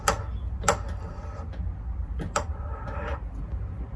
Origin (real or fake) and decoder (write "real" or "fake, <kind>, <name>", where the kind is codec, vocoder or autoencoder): fake, vocoder, BigVGAN v2